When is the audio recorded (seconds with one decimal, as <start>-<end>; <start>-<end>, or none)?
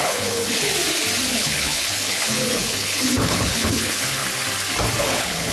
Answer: 0.7-1.3; 4.2-5.0